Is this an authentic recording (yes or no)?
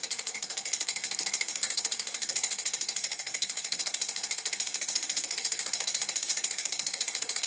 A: no